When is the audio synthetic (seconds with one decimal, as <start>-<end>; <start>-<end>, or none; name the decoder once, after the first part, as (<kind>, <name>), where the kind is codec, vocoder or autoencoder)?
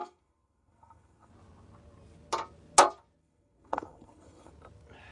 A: 0.0-1.3 (codec, SNAC); 3.2-4.5